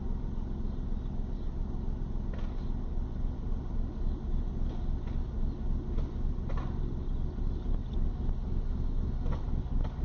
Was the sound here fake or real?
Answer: real